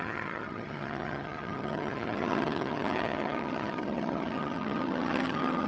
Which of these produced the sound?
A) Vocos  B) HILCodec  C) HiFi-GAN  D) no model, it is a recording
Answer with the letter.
C